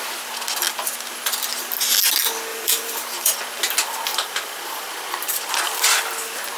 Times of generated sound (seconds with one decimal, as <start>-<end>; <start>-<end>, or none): 2.5-3.4; 4.1-4.9